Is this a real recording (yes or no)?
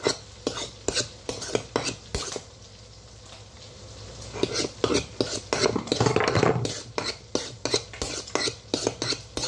yes